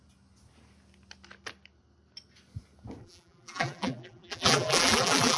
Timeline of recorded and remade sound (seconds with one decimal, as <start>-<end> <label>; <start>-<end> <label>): 0.0-3.0 recorded; 3.0-5.4 remade